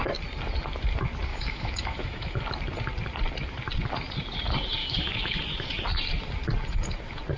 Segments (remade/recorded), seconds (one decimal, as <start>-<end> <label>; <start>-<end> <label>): 0.0-1.3 recorded; 1.3-2.4 remade; 2.4-4.8 recorded; 4.8-5.4 remade; 5.4-7.4 recorded